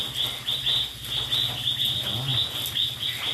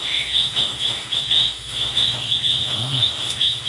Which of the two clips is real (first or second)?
first